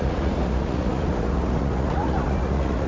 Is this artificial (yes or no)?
yes